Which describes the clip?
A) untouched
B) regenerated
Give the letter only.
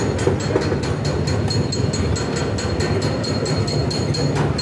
A